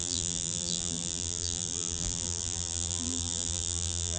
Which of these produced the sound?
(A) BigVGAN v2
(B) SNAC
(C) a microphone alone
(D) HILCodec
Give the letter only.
A